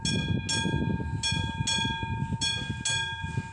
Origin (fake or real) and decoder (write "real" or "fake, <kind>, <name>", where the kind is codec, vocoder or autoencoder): real